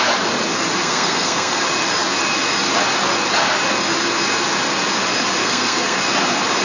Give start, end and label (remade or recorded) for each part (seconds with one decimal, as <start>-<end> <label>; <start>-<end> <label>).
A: 0.0-0.8 recorded; 0.8-1.6 remade; 1.6-5.4 recorded; 5.4-6.0 remade; 6.0-6.6 recorded